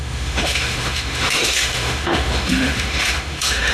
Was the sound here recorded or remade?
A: remade